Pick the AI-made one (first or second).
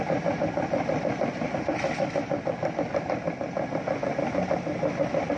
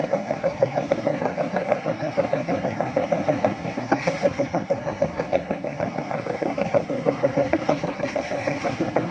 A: second